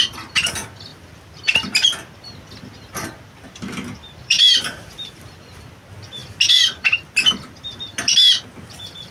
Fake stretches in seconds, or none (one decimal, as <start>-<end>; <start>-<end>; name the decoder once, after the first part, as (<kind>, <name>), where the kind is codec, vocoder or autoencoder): 0.9-5.6 (vocoder, BigVGAN v2)